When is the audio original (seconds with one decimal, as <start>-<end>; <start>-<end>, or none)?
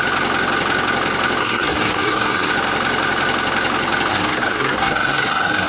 0.0-1.4; 2.5-4.1